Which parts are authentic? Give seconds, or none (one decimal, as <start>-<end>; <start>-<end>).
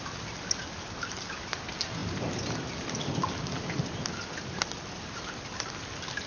0.0-6.3